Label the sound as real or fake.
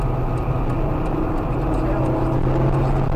real